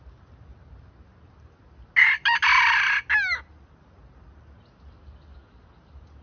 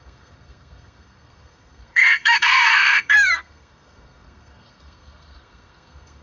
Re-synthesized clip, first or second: second